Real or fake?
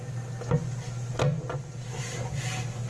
real